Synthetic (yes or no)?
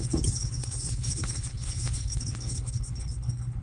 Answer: yes